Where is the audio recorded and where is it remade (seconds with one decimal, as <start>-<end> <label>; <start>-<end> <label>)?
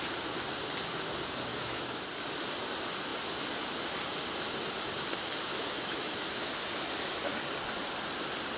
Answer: 0.0-1.5 recorded; 1.5-2.0 remade; 2.0-5.5 recorded; 5.5-6.5 remade; 6.5-8.6 recorded